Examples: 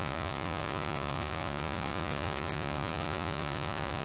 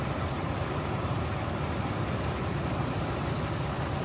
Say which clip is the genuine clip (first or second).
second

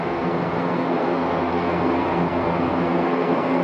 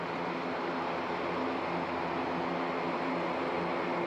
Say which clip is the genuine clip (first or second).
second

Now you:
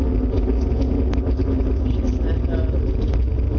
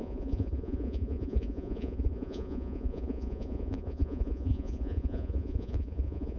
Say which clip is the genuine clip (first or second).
first